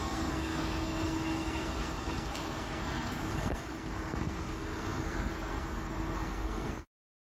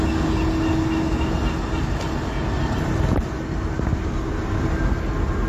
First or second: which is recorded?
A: second